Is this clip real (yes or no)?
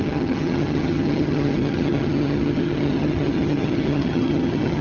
no